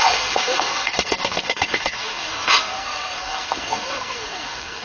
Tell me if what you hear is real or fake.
fake